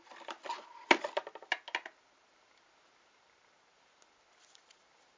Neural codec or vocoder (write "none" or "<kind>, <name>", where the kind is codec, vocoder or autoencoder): none